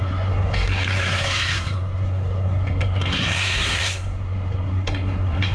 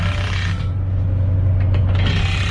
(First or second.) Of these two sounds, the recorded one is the second